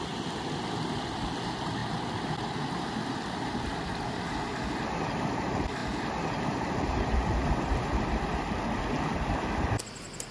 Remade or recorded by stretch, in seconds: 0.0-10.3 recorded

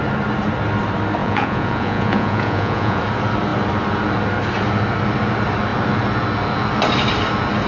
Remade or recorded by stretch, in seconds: 0.0-1.2 recorded; 1.2-3.0 remade; 3.0-7.7 recorded

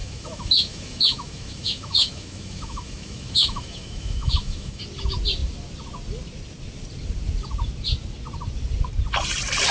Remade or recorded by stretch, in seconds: 0.0-4.8 remade; 4.8-9.7 recorded